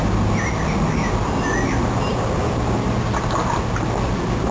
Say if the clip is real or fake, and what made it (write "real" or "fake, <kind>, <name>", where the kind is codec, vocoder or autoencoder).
real